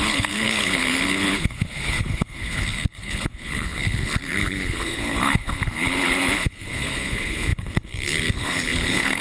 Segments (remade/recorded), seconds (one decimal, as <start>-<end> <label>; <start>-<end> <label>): 0.0-9.2 remade